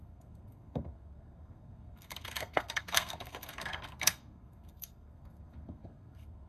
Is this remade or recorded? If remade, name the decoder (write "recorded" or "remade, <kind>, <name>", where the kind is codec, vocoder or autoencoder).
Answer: remade, codec, SNAC